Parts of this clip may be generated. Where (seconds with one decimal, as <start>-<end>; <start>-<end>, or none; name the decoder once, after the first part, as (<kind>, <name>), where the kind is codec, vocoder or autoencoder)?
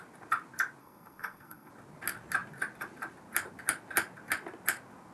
0.8-1.7 (codec, SNAC)